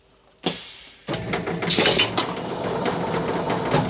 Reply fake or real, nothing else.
real